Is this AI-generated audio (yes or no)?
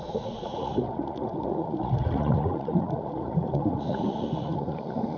yes